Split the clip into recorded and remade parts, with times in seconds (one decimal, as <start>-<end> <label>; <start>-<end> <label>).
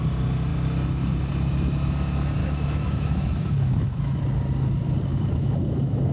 0.0-2.4 recorded; 2.4-4.2 remade; 4.2-5.1 recorded; 5.1-6.1 remade